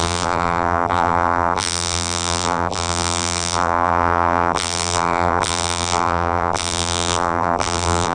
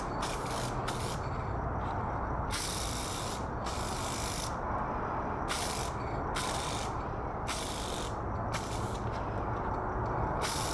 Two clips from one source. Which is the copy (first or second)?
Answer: first